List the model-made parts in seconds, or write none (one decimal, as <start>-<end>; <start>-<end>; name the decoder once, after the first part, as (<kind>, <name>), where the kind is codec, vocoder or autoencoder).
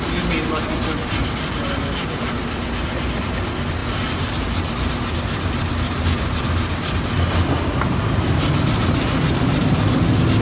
none